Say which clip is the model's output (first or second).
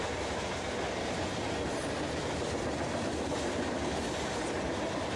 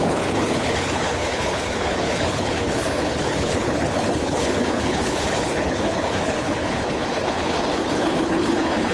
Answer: second